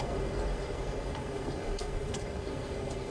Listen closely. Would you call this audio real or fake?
fake